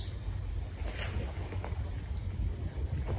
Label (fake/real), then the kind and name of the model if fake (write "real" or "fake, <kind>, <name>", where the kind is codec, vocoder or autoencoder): real